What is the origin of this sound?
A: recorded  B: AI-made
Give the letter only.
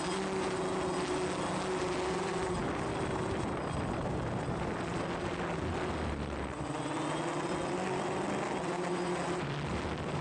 A